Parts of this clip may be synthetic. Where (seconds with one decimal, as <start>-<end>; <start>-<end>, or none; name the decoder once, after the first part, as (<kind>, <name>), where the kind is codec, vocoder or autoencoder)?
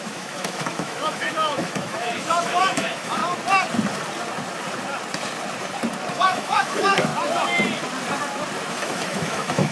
0.0-3.2 (autoencoder, DAC-VAE); 6.1-7.1; 8.7-9.7